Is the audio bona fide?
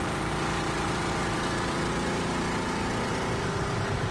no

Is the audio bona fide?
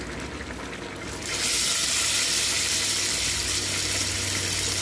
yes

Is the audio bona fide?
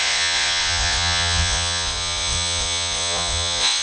no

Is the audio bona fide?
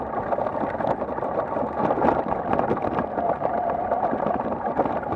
yes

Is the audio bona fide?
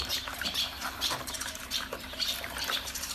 no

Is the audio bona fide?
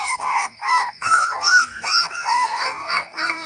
no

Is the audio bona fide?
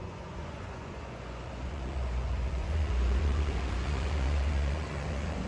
no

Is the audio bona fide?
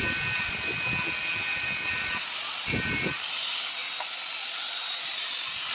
yes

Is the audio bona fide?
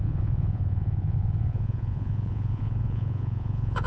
no